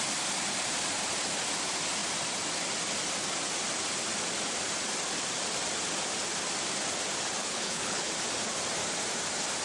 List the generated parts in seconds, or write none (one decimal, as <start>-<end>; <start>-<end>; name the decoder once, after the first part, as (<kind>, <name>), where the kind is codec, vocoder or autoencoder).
7.4-8.1 (codec, HILCodec)